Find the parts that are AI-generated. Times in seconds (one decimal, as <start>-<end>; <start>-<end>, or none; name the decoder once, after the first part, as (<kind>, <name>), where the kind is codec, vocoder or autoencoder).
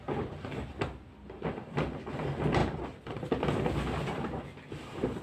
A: none